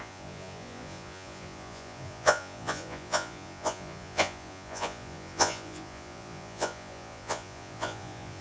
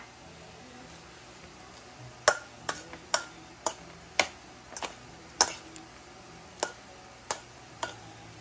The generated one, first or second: first